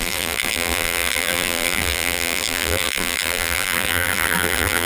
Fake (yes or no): yes